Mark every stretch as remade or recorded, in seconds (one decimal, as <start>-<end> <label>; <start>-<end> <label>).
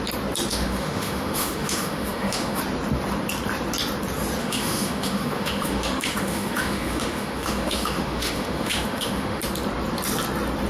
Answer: 0.0-0.5 recorded; 0.5-2.6 remade; 2.6-4.4 recorded; 4.4-9.4 remade; 9.4-10.7 recorded